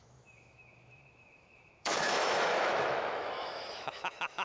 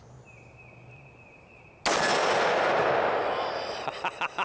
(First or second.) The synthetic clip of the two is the first